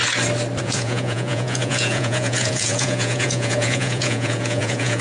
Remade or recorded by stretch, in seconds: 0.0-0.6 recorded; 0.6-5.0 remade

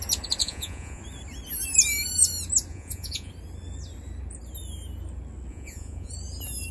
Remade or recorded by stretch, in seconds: 0.0-0.4 recorded; 0.4-1.0 remade; 1.0-2.7 recorded; 2.7-3.3 remade; 3.3-5.5 recorded; 5.5-6.1 remade; 6.1-6.7 recorded

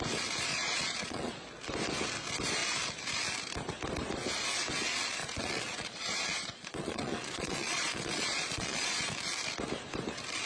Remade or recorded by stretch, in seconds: 0.0-0.5 recorded; 0.5-1.3 remade; 1.3-5.2 recorded; 5.2-9.1 remade; 9.1-10.5 recorded

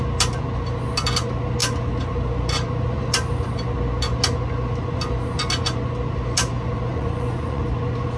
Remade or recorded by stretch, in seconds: 0.0-6.9 recorded; 6.9-7.6 remade; 7.6-8.2 recorded

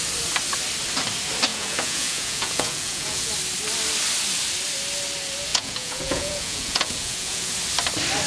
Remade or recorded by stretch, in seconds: 0.0-1.5 recorded; 1.5-3.3 remade; 3.3-5.5 recorded; 5.5-7.5 remade; 7.5-8.3 recorded

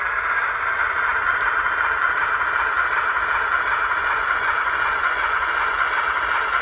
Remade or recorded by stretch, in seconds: 0.0-4.0 recorded; 4.0-5.9 remade; 5.9-6.6 recorded